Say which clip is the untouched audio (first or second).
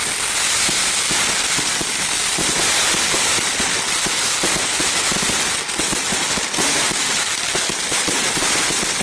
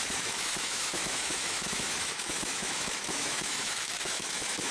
first